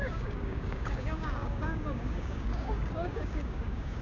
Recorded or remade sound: remade